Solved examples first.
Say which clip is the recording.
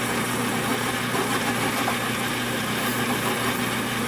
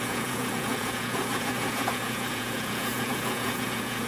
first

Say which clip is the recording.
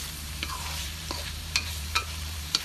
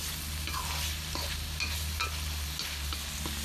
second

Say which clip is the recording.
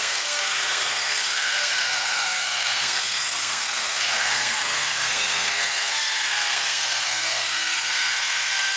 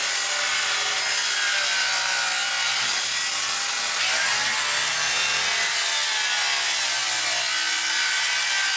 second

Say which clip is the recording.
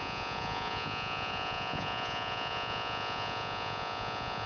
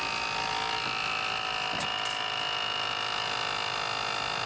second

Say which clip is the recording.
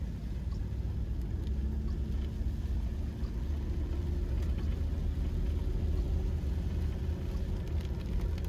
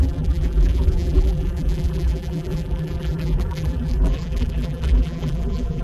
first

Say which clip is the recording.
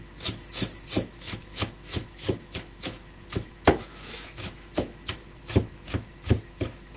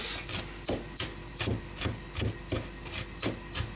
second